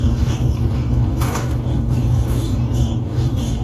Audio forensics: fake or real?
fake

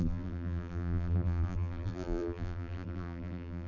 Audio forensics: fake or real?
fake